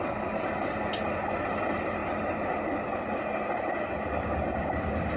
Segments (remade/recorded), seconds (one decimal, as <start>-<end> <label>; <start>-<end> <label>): 0.0-5.2 recorded

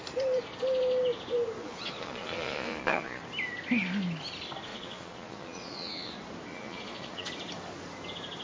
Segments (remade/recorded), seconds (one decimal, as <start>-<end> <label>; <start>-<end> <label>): 0.0-1.6 recorded; 1.6-3.2 remade; 3.2-4.7 recorded; 4.7-6.1 remade; 6.1-6.5 recorded; 6.5-7.3 remade; 7.3-8.4 recorded

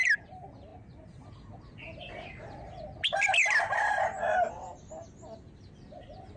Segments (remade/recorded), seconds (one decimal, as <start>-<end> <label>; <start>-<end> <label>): 0.0-6.4 recorded

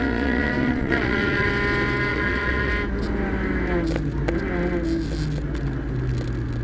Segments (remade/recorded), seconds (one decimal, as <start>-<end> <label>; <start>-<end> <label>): 0.0-1.5 remade; 1.5-2.1 recorded; 2.1-2.7 remade; 2.7-6.6 recorded

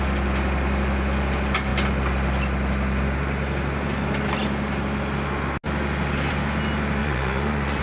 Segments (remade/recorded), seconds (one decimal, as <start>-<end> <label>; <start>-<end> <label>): 0.0-7.0 recorded; 7.0-7.8 remade

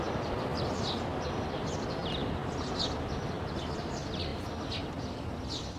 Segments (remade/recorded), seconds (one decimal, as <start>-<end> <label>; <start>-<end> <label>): 0.0-5.8 recorded

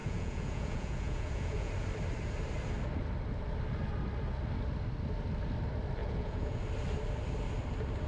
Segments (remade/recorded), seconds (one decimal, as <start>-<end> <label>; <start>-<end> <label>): 0.0-1.7 remade; 1.7-6.0 recorded; 6.0-6.6 remade; 6.6-8.1 recorded